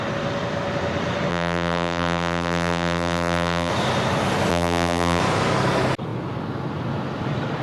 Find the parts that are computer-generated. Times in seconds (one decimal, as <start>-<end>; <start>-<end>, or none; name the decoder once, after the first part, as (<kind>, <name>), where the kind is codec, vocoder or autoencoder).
1.3-3.7 (vocoder, BigVGAN v2); 4.5-5.2

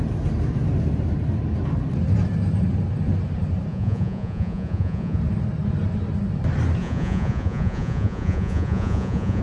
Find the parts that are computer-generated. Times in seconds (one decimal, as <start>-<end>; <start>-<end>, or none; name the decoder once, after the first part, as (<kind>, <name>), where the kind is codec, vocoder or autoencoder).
3.7-5.2 (vocoder, Vocos); 6.8-9.4

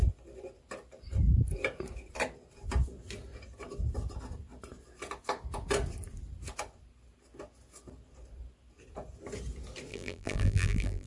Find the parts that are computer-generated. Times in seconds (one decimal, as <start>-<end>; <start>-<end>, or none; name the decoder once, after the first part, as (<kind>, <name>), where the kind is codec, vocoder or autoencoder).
9.9-11.1 (vocoder, BigVGAN v2)

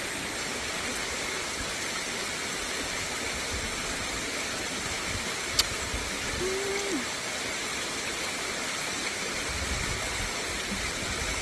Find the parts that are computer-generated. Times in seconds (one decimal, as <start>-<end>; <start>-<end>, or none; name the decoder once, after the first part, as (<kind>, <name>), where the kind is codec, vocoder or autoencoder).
none

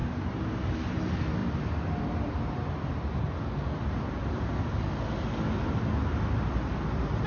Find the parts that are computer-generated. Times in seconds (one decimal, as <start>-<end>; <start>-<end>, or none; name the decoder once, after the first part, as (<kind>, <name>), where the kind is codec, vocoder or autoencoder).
1.4-2.0 (vocoder, BigVGAN v2)

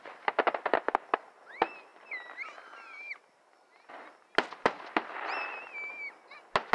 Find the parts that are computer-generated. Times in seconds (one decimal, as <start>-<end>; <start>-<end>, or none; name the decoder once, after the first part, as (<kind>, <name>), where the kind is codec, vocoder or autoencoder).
none

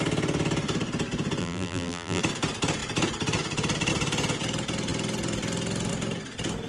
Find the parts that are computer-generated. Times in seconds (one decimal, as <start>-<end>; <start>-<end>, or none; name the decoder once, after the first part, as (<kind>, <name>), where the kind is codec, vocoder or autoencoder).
1.4-2.2 (vocoder, BigVGAN v2)

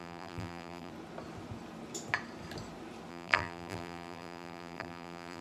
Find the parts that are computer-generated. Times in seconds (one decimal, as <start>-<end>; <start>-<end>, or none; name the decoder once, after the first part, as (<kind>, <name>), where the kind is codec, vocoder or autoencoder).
0.0-0.9 (vocoder, BigVGAN v2); 3.1-5.4